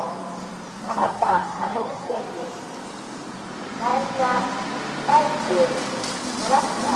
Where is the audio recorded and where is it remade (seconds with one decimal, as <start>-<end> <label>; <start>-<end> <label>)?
0.0-0.7 recorded; 0.7-2.2 remade; 2.2-7.0 recorded